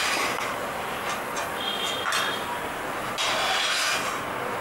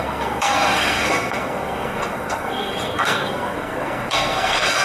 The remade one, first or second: second